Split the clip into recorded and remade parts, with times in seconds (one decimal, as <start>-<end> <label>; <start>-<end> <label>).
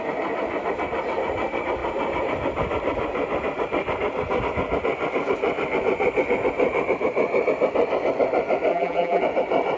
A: 0.0-8.7 recorded; 8.7-9.2 remade; 9.2-9.8 recorded